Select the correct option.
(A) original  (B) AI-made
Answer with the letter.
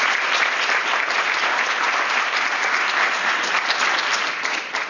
A